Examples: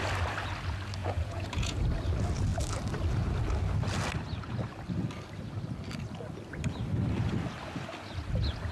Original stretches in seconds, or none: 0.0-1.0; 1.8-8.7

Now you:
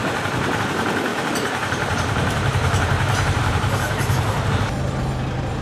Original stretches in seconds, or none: 0.0-1.1; 4.5-5.6

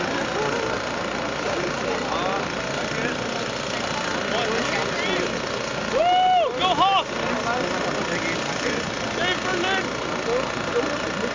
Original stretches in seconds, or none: 0.0-11.3

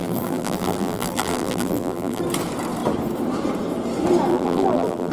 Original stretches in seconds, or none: 2.2-4.3

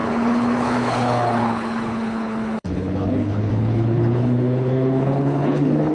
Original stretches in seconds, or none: none

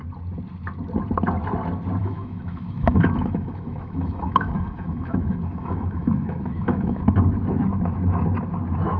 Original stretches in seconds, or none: 0.0-2.0; 7.0-9.0

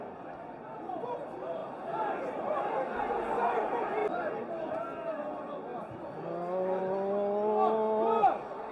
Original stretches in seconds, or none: 0.0-1.6; 3.0-4.0; 4.8-8.7

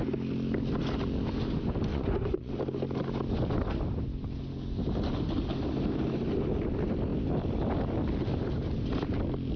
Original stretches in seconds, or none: 0.0-1.9; 2.5-9.6